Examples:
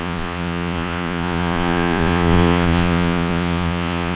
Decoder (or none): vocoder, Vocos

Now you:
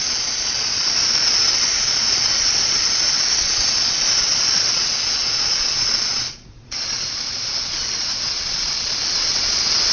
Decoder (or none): vocoder, Vocos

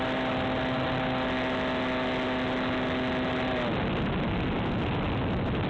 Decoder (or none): none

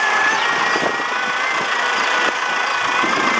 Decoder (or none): none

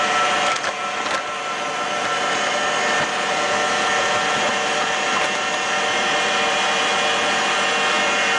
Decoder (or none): none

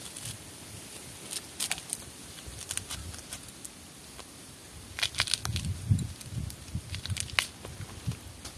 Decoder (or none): none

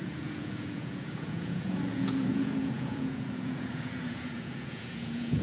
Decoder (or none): vocoder, Vocos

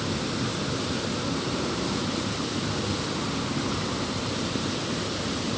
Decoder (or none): none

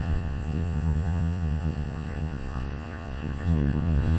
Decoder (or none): vocoder, Vocos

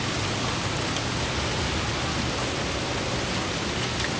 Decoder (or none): none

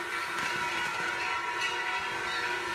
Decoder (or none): none